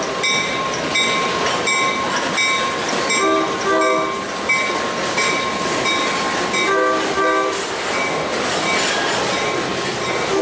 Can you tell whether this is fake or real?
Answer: real